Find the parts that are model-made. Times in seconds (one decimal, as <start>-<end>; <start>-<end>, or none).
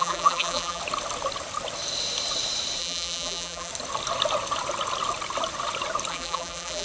0.0-0.8; 2.8-3.7; 6.1-6.8